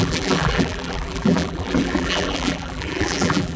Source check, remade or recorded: remade